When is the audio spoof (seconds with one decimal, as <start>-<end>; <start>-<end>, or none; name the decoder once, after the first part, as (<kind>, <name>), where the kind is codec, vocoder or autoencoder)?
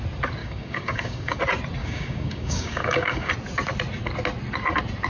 0.4-1.4 (codec, DAC); 1.8-3.3